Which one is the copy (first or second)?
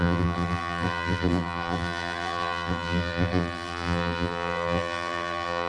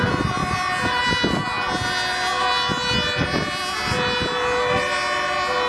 first